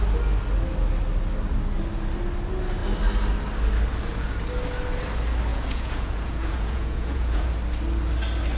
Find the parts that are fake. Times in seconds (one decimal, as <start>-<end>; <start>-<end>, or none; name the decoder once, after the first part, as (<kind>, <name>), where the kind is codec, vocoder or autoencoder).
5.5-7.5 (vocoder, Vocos)

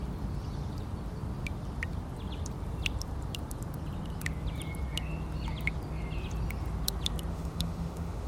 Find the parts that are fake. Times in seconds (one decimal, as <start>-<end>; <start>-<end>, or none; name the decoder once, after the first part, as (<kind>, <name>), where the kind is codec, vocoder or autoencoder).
7.3-8.3 (autoencoder, DAC-VAE)

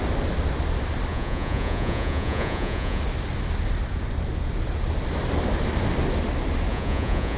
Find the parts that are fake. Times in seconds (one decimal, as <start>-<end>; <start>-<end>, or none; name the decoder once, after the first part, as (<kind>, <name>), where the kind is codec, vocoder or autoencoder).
1.1-3.0 (vocoder, Vocos); 6.7-7.4

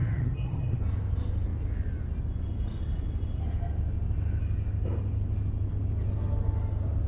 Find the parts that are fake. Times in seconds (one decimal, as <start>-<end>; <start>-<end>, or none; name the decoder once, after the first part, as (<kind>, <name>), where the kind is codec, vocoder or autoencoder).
0.0-0.8 (vocoder, HiFi-GAN)

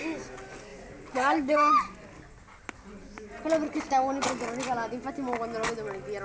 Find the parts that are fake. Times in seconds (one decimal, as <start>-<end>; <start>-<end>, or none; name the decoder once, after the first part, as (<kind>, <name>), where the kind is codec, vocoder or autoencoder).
none

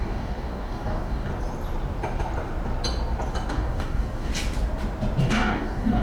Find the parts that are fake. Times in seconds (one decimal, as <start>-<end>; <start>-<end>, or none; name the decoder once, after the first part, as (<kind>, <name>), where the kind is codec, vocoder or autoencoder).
0.0-1.3 (codec, DAC); 3.5-4.3; 5.2-6.0